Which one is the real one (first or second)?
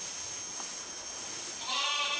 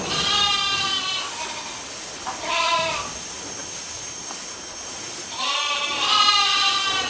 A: first